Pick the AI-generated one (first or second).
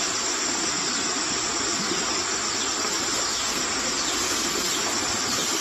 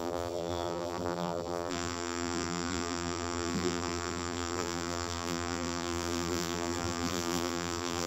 second